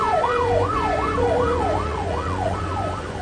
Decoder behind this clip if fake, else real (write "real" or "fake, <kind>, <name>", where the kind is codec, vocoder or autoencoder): fake, vocoder, Vocos